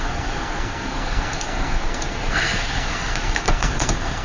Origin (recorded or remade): remade